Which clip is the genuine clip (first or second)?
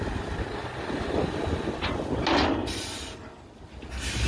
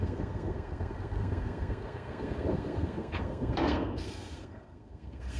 first